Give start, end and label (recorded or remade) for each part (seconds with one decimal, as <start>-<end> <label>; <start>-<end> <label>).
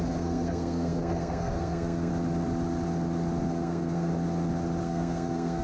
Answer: 0.0-2.1 remade; 2.1-3.5 recorded; 3.5-4.1 remade; 4.1-4.8 recorded; 4.8-5.6 remade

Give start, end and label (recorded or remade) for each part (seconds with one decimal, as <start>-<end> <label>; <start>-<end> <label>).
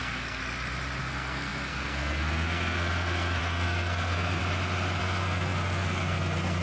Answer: 0.0-0.4 remade; 0.4-1.0 recorded; 1.0-4.4 remade; 4.4-5.0 recorded; 5.0-6.6 remade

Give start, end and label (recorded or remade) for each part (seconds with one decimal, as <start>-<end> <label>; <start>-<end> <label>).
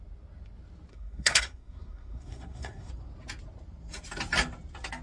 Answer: 0.0-0.9 recorded; 0.9-2.9 remade; 2.9-5.0 recorded